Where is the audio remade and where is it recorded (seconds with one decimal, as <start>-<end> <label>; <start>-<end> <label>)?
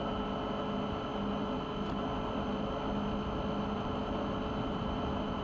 0.0-5.4 recorded